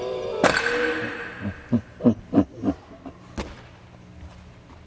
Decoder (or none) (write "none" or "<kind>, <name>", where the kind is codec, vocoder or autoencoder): none